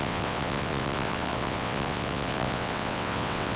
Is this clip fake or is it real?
fake